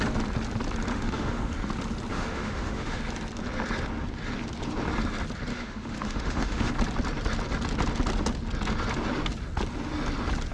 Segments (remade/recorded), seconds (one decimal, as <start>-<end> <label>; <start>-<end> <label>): 0.0-0.9 recorded; 0.9-1.5 remade; 1.5-2.1 recorded; 2.1-3.0 remade; 3.0-5.5 recorded; 5.5-6.7 remade; 6.7-10.5 recorded

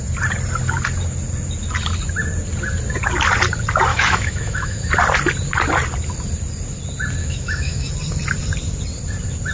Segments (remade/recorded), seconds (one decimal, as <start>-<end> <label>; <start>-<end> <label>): 0.0-3.9 recorded; 3.9-4.8 remade; 4.8-7.2 recorded; 7.2-7.9 remade; 7.9-9.5 recorded

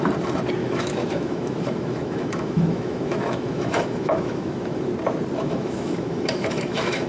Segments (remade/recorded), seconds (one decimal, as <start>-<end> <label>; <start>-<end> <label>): 0.0-0.6 recorded; 0.6-4.9 remade; 4.9-5.4 recorded; 5.4-7.1 remade

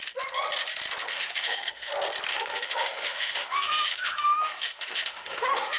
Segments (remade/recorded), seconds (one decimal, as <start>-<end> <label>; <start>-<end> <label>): 0.0-1.0 recorded; 1.0-1.9 remade; 1.9-2.3 recorded; 2.3-5.8 remade

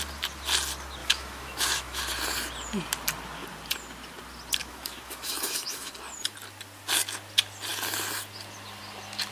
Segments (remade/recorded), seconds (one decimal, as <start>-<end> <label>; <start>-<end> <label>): 0.0-1.0 recorded; 1.0-2.0 remade; 2.0-4.6 recorded; 4.6-5.9 remade; 5.9-9.3 recorded